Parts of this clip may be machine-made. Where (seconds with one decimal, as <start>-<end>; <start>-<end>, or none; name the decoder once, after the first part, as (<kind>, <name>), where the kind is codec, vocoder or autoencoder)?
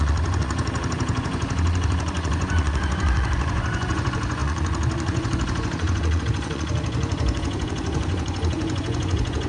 0.0-9.5 (vocoder, Vocos)